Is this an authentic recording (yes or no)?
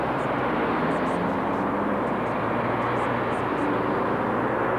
yes